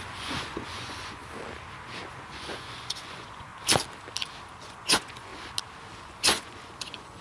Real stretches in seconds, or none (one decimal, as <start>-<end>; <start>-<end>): 1.2-2.1; 3.5-4.6; 5.3-6.0